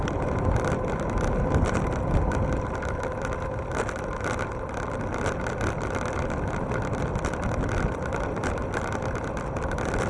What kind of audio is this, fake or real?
real